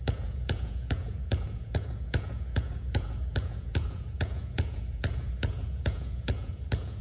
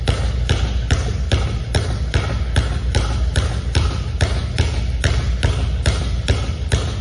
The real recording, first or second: second